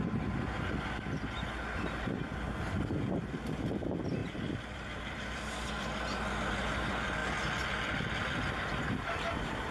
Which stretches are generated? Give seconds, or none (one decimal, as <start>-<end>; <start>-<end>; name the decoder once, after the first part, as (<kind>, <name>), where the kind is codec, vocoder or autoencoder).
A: 4.2-5.7 (vocoder, BigVGAN v2)

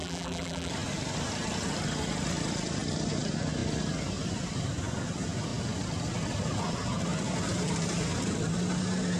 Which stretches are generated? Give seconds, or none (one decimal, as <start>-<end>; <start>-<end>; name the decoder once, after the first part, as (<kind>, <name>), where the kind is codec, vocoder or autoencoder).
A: 0.0-0.7 (vocoder, BigVGAN v2)

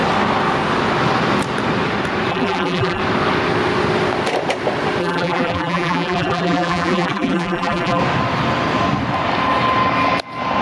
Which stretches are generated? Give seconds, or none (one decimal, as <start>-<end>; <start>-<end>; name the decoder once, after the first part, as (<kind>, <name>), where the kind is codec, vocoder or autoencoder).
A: 2.3-3.0 (vocoder, BigVGAN v2); 5.0-8.0

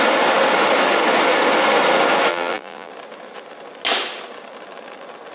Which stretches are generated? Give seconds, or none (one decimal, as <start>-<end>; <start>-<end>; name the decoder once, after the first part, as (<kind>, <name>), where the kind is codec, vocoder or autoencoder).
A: 2.3-2.9 (vocoder, BigVGAN v2)

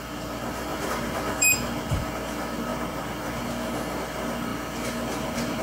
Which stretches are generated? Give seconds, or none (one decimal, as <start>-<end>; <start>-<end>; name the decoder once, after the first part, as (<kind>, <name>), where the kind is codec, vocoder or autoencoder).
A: 0.7-1.8 (vocoder, BigVGAN v2); 2.7-3.4

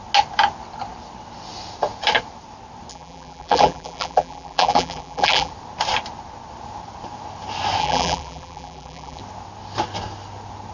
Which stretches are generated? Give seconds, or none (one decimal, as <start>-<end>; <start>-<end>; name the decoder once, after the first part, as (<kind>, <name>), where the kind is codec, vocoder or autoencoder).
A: 2.9-5.5 (vocoder, BigVGAN v2); 7.8-9.2